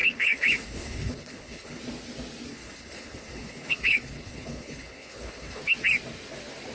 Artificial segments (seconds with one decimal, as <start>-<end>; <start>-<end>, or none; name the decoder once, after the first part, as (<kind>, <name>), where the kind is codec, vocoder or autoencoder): 0.0-1.8 (codec, HILCodec); 2.5-5.6